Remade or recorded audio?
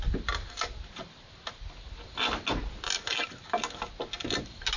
recorded